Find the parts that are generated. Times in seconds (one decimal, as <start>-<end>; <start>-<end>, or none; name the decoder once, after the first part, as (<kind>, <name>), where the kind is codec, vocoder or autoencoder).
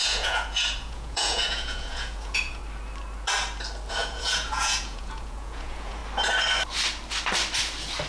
0.0-2.6 (vocoder, Vocos); 3.9-6.0